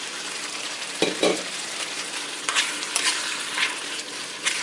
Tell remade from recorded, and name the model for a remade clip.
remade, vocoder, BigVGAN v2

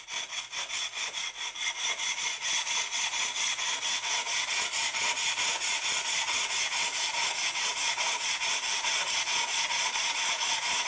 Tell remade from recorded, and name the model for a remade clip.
remade, vocoder, Vocos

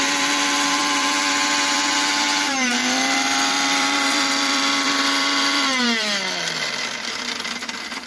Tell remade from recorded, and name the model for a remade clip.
remade, vocoder, BigVGAN v2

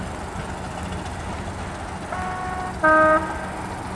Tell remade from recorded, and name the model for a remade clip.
recorded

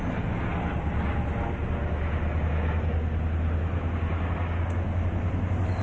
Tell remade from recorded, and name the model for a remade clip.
recorded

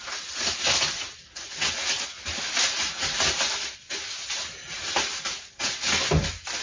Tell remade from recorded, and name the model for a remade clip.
recorded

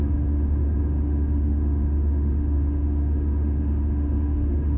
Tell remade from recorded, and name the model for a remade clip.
remade, autoencoder, DAC-VAE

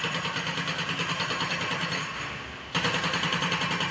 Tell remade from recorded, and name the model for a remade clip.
recorded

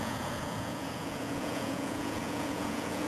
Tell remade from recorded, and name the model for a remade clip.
remade, vocoder, Vocos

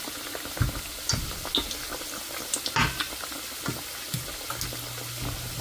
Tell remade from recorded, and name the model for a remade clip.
recorded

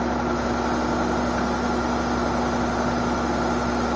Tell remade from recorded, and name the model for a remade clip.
recorded